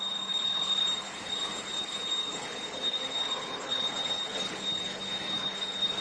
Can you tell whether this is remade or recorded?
remade